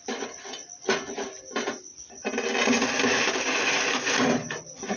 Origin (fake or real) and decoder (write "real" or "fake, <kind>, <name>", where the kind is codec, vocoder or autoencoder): real